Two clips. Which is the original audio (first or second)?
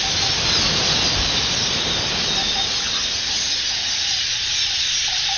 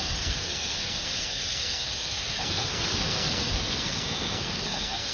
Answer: first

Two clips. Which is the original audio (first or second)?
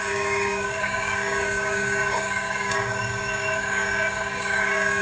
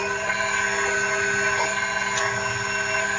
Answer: second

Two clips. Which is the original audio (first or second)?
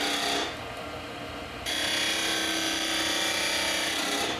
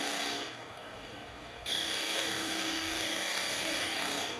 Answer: first